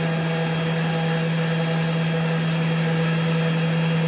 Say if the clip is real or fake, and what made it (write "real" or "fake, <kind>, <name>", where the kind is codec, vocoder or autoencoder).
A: real